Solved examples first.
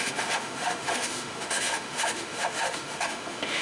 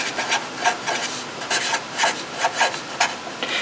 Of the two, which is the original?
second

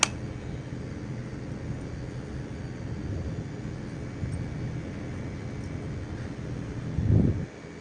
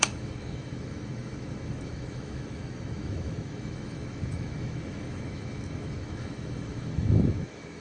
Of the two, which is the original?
first